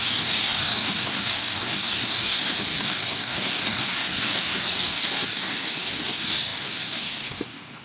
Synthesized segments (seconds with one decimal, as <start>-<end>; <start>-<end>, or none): 0.0-7.8